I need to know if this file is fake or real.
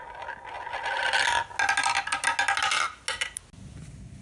real